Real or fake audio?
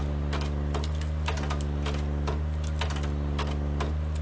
real